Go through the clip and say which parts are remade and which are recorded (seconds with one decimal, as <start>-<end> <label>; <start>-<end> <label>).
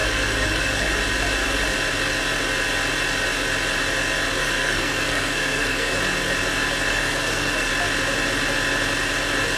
0.0-0.9 remade; 0.9-4.4 recorded; 4.4-6.0 remade; 6.0-6.9 recorded; 6.9-7.7 remade; 7.7-9.6 recorded